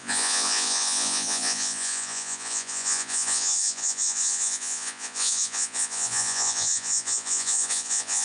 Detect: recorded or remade remade